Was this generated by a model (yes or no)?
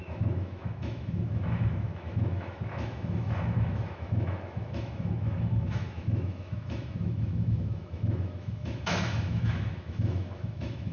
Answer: yes